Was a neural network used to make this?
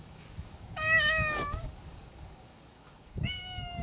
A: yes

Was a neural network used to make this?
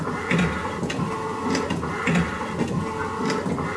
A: no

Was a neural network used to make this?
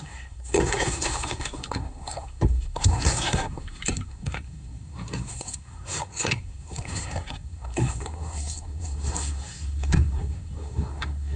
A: yes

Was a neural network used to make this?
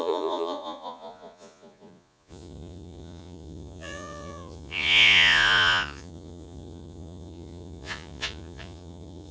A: yes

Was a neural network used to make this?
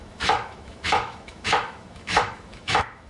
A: yes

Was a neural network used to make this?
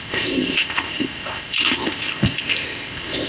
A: yes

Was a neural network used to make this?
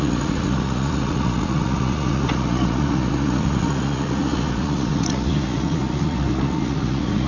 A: yes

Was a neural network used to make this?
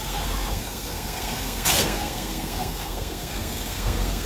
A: yes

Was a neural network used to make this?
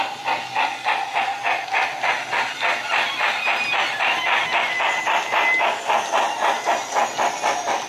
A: no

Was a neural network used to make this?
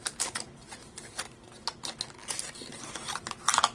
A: no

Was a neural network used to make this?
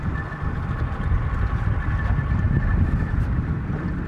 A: no